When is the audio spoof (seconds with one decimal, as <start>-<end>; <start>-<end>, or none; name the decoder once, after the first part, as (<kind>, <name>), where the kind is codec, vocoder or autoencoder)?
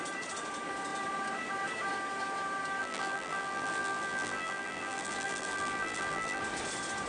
2.8-6.4 (vocoder, BigVGAN v2)